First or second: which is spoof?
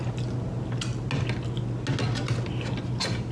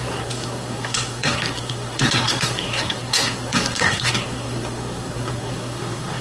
second